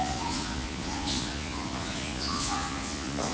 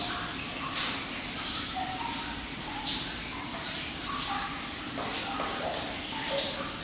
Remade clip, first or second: first